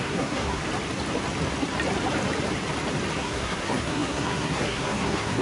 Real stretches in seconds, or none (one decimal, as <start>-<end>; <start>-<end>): 0.6-3.2